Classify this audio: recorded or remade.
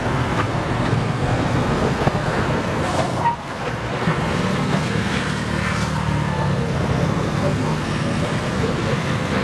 remade